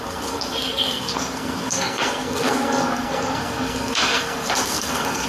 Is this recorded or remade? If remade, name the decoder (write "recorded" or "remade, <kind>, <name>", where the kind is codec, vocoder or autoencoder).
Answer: remade, codec, SNAC